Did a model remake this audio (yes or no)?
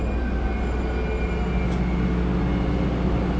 no